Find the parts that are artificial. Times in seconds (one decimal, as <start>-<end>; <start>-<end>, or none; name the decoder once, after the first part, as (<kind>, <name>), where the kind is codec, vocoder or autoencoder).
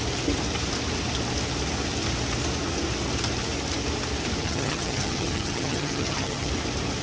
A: 4.4-6.5 (vocoder, HiFi-GAN)